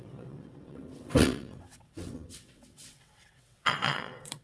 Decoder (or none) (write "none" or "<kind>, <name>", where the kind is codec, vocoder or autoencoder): vocoder, WaveNeXt